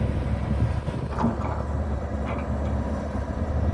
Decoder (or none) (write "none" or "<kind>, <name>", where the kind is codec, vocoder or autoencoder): vocoder, BigVGAN v2